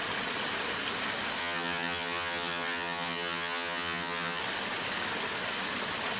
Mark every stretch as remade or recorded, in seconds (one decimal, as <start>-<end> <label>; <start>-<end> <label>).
0.0-1.4 recorded; 1.4-4.4 remade; 4.4-6.2 recorded